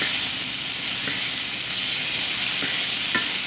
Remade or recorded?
recorded